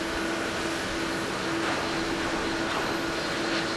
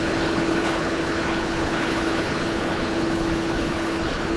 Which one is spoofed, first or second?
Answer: second